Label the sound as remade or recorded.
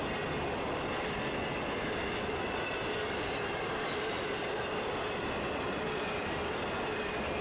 recorded